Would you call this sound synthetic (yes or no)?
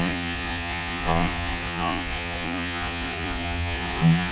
yes